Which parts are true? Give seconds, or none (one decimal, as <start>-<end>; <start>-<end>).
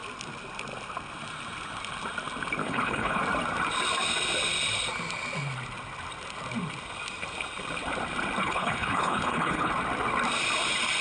0.0-2.6; 3.2-8.4; 9.7-11.0